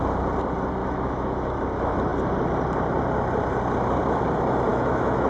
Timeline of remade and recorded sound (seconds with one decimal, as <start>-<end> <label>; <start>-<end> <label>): 0.0-0.8 recorded; 0.8-1.5 remade; 1.5-4.7 recorded; 4.7-5.3 remade